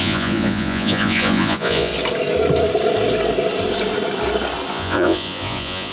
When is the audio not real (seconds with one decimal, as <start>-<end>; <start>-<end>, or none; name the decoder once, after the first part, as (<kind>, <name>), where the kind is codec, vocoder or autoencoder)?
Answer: 0.0-1.9 (vocoder, Vocos); 4.7-5.9